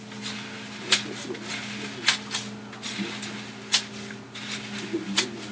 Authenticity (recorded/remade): recorded